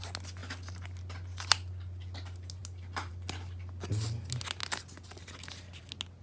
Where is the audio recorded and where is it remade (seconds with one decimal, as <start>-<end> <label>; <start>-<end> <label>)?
0.0-6.2 recorded